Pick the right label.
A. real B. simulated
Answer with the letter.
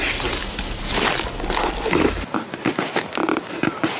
A